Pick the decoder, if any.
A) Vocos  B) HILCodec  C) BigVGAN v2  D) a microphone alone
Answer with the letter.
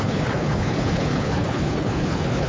B